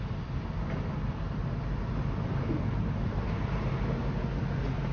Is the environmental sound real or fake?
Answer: real